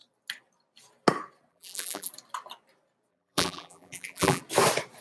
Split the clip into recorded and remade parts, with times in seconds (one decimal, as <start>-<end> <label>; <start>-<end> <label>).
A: 0.0-1.5 recorded; 1.5-2.1 remade; 2.1-3.1 recorded; 3.1-4.4 remade; 4.4-5.0 recorded